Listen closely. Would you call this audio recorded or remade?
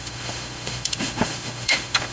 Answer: remade